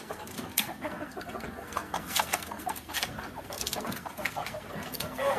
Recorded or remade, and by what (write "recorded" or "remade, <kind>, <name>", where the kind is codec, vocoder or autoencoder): remade, codec, SNAC